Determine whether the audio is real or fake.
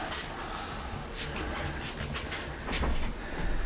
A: real